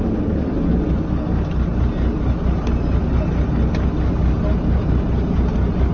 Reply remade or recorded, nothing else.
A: recorded